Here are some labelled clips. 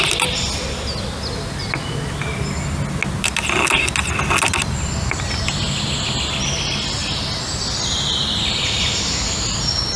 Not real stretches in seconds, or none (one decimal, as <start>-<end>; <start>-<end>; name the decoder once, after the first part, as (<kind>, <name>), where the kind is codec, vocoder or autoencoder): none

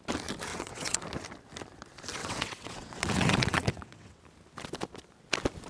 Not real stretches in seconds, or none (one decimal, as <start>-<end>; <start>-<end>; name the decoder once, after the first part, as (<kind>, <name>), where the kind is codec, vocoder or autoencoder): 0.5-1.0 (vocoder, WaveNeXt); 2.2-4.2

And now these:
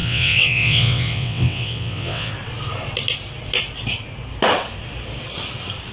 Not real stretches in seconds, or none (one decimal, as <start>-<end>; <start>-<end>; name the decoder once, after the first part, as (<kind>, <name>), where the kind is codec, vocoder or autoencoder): 0.0-2.3 (vocoder, WaveNeXt)

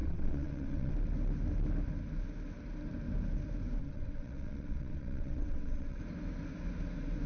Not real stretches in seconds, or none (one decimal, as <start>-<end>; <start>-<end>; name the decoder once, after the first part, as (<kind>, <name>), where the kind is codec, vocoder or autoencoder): 0.0-0.9 (vocoder, WaveNeXt); 3.8-6.0